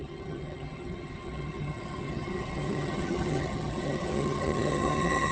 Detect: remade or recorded remade